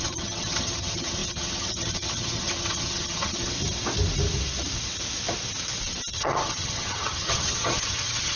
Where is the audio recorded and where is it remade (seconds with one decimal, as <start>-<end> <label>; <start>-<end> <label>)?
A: 0.0-3.5 remade; 3.5-6.1 recorded; 6.1-8.4 remade